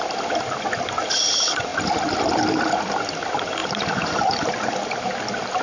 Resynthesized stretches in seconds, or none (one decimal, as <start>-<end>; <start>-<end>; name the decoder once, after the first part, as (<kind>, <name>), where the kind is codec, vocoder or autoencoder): 3.6-4.5 (vocoder, BigVGAN v2)